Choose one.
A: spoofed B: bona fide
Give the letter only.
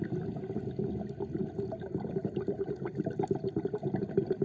B